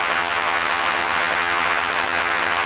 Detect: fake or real fake